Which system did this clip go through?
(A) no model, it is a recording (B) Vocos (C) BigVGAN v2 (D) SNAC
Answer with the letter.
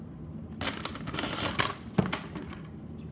A